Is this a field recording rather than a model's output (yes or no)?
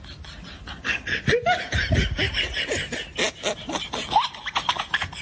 yes